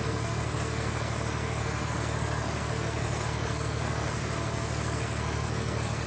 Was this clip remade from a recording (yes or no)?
yes